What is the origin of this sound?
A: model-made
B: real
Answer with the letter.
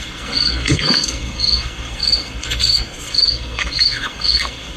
A